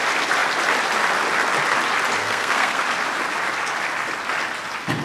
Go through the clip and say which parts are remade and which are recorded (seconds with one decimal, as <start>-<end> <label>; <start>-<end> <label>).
0.0-2.2 recorded; 2.2-2.8 remade; 2.8-5.0 recorded